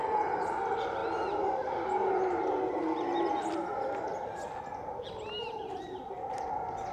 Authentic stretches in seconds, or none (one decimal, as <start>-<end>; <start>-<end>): 0.0-1.0; 3.4-6.9